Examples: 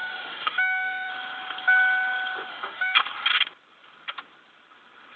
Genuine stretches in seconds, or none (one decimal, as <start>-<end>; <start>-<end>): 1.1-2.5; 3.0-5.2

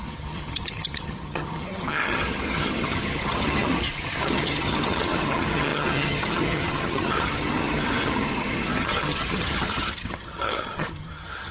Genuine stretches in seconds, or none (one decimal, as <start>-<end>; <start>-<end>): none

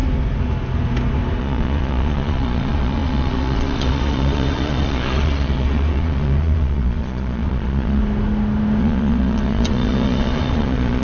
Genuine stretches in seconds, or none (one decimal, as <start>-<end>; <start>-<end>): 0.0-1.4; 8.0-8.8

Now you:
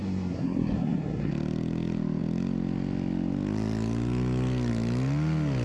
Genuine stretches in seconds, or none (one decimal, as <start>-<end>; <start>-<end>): 1.3-5.6

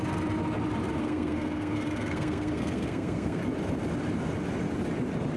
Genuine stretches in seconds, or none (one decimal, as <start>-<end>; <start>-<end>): 0.0-1.0; 3.4-5.4